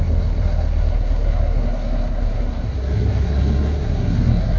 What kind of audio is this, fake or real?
fake